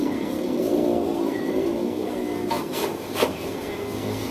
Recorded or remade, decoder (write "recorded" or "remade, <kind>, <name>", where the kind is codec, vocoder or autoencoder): remade, codec, SNAC